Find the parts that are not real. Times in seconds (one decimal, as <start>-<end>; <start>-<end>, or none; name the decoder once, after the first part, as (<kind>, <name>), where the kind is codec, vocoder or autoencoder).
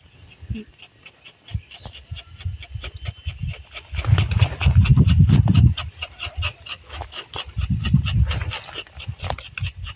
6.7-7.3 (autoencoder, DAC-VAE)